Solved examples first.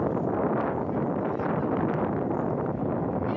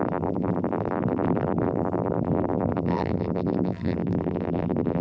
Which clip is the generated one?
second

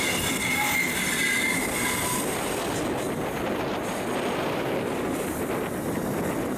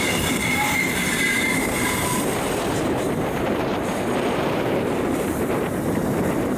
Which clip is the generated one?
second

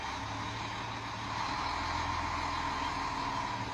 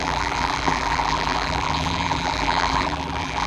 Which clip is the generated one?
second